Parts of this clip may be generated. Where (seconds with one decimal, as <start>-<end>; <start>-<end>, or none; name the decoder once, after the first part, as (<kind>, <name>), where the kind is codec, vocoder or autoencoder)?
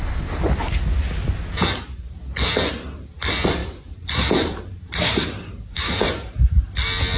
3.6-6.5 (vocoder, BigVGAN v2)